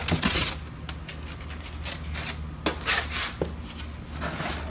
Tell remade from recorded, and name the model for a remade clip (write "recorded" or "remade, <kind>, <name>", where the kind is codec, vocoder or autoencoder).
recorded